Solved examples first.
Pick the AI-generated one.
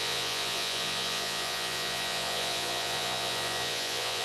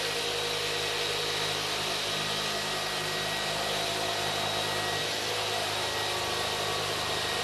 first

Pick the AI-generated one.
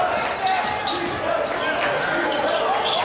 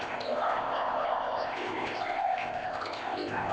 second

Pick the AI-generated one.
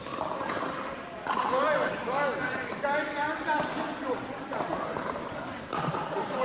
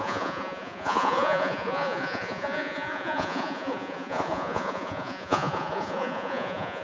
second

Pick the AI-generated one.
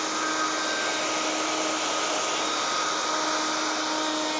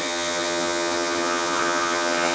second